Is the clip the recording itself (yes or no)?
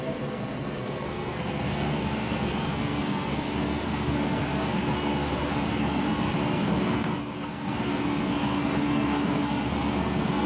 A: no